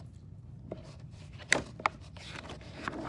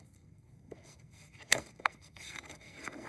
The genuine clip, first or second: first